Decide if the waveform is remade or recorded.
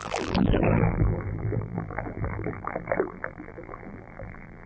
remade